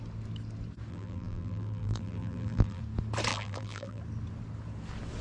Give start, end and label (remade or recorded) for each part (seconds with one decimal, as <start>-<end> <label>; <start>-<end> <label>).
0.0-0.9 recorded; 0.9-2.8 remade; 2.8-3.3 recorded; 3.3-4.0 remade; 4.0-5.2 recorded